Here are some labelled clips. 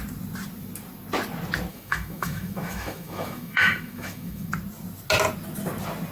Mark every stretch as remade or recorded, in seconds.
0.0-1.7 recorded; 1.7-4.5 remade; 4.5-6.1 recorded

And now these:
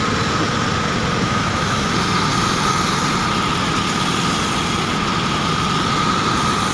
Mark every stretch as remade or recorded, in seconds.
0.0-1.2 recorded; 1.2-1.9 remade; 1.9-6.7 recorded

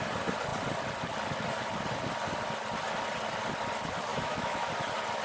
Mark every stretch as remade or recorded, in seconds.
0.0-4.1 recorded; 4.1-4.7 remade; 4.7-5.2 recorded

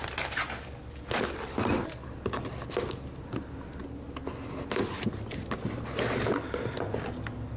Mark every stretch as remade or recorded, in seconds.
0.0-7.6 recorded